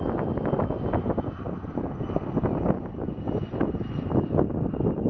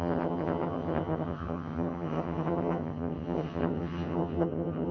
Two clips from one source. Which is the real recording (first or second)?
first